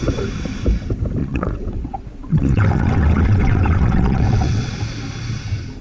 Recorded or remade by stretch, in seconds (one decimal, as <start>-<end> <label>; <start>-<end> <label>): 0.0-1.2 recorded; 1.2-4.7 remade; 4.7-5.8 recorded